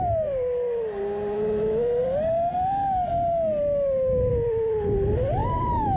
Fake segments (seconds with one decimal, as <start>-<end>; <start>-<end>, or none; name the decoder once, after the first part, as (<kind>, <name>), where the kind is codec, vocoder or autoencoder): 5.4-6.0 (vocoder, BigVGAN v2)